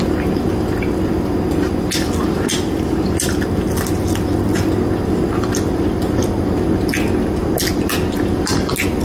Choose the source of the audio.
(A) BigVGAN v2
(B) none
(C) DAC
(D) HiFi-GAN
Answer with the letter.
B